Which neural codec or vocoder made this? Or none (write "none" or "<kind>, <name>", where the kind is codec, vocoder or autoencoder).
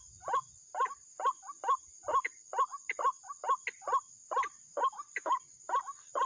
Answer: none